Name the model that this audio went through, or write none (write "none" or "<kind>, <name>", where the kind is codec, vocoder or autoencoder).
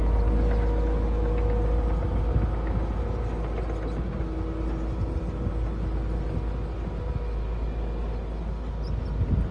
none